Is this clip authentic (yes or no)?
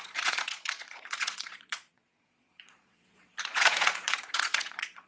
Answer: no